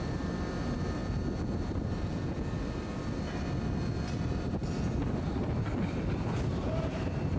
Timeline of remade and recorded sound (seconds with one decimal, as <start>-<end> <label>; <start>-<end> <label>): 0.0-1.0 remade; 1.0-1.7 recorded; 1.7-2.9 remade; 2.9-4.1 recorded; 4.1-4.6 remade; 4.6-5.2 recorded; 5.2-7.4 remade